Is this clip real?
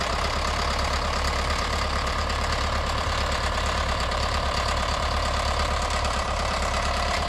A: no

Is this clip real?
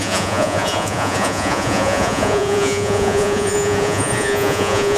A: no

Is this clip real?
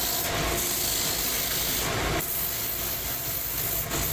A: yes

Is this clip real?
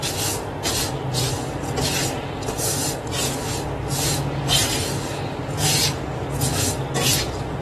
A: yes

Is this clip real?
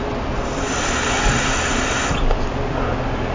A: yes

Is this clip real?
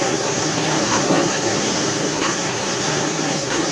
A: no